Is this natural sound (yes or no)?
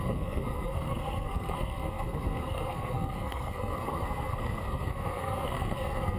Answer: no